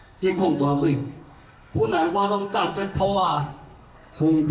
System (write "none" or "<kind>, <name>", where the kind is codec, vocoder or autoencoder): codec, SNAC